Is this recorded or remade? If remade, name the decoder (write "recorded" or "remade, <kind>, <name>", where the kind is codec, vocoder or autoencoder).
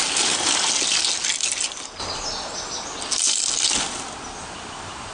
recorded